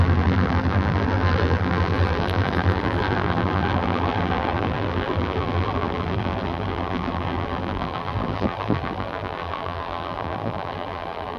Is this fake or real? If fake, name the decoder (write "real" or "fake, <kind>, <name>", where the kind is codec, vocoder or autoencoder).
fake, vocoder, BigVGAN v2